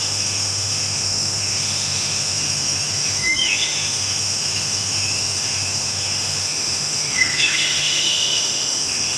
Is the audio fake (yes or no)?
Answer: yes